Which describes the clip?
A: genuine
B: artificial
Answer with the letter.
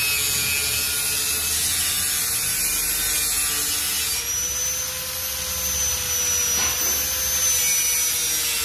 A